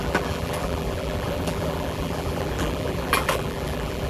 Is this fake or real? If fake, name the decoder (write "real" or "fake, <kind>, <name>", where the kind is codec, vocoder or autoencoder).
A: fake, vocoder, BigVGAN v2